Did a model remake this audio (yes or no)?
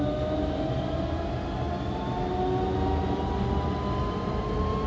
no